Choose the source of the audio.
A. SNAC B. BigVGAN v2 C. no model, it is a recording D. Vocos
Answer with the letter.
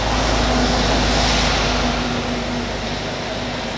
C